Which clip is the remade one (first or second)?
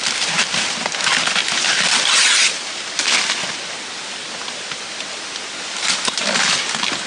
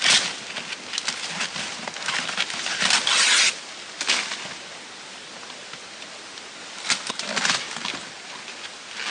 first